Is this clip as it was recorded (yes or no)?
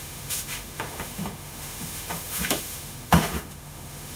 no